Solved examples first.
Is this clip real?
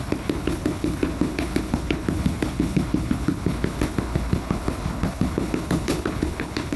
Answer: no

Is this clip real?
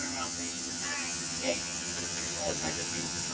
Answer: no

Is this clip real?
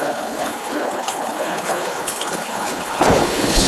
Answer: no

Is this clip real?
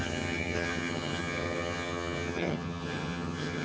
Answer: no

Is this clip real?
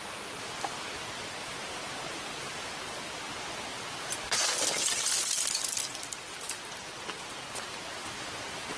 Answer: yes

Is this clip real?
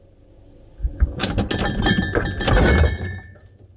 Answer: yes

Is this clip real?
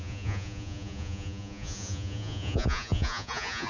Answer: no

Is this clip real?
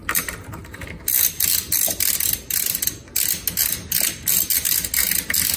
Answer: yes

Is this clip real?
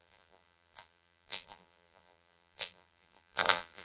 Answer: no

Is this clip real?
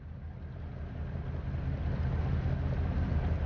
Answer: yes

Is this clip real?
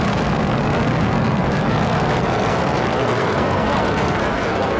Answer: no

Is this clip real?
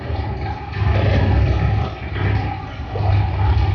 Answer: yes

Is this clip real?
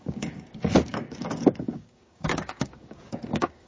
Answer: no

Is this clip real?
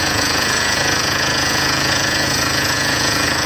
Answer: no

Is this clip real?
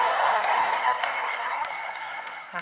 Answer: no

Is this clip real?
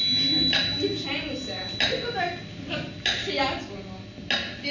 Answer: yes